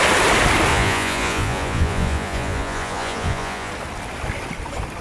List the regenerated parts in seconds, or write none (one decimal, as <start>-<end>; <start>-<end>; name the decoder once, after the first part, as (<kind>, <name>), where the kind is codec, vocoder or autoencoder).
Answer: 0.7-3.7 (vocoder, Vocos)